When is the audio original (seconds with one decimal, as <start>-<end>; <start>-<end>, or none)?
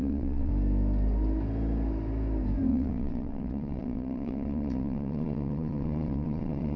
0.5-2.7